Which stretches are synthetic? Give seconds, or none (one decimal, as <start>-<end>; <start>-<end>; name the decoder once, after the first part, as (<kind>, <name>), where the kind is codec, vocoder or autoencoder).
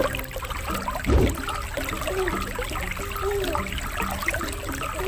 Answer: none